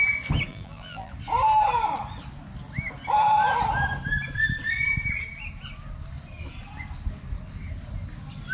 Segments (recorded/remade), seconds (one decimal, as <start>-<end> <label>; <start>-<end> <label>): 0.0-0.5 recorded; 0.5-1.1 remade; 1.1-8.5 recorded